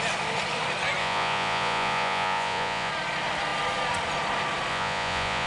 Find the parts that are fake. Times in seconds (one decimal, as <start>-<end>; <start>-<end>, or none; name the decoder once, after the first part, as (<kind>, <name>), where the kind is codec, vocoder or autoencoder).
1.0-2.9 (vocoder, Vocos); 4.7-5.5